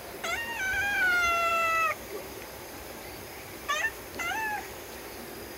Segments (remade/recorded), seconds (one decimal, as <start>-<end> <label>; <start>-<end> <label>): 0.0-1.5 recorded; 1.5-4.9 remade; 4.9-5.6 recorded